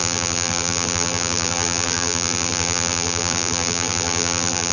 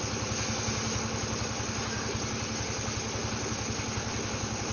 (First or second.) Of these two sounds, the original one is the second